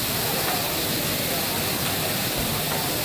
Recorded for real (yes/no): yes